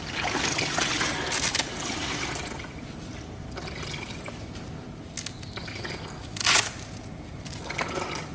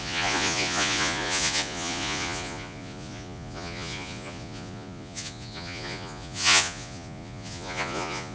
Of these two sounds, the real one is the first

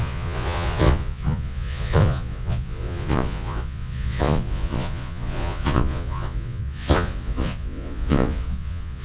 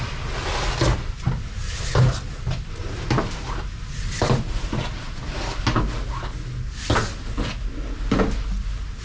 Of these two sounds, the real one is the second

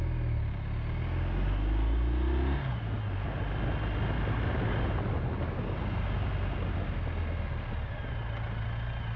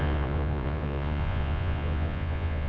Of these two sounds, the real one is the first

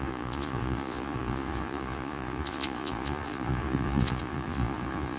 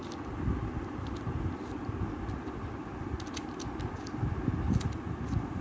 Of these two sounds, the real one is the second